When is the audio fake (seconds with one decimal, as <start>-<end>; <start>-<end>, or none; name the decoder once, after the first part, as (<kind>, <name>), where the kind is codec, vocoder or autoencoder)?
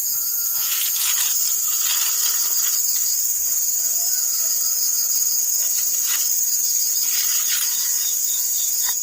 0.0-1.1 (vocoder, Vocos)